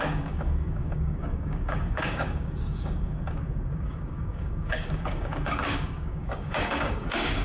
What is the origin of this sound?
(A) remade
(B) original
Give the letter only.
A